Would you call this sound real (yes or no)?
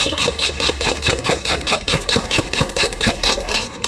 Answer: no